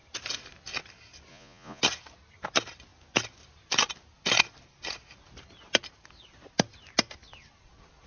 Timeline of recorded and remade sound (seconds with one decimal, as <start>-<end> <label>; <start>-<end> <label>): 0.0-1.3 recorded; 1.3-1.8 remade; 1.8-8.1 recorded